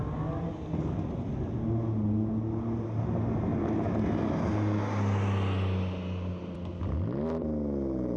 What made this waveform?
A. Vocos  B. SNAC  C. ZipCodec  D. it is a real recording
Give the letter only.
D